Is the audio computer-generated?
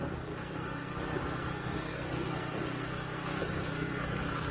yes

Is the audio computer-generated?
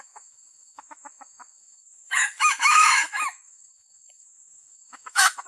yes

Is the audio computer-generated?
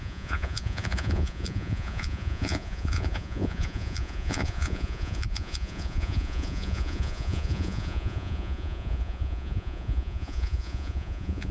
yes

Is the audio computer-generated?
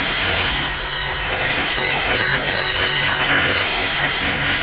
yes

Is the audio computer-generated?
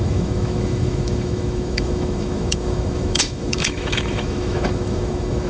yes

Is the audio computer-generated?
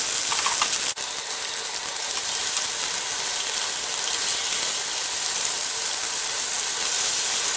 no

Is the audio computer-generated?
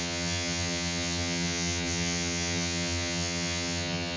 yes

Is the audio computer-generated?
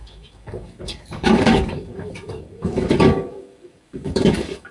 yes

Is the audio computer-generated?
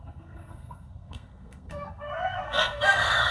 yes